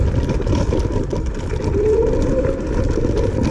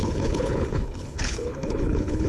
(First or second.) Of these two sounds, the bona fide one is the first